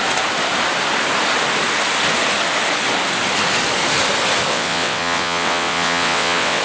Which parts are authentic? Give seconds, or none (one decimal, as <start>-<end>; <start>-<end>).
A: 0.0-4.5